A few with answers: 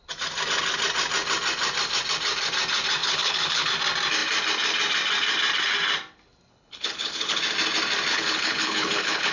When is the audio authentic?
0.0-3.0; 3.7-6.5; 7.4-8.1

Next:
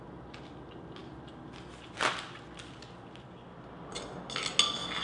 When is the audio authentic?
0.0-5.0

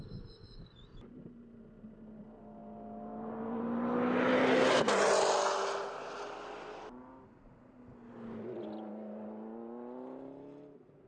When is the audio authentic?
0.0-11.1